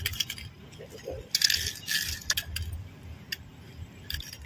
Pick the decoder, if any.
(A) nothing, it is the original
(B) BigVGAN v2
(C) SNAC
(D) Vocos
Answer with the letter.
A